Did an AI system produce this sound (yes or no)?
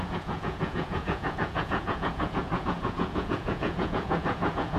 yes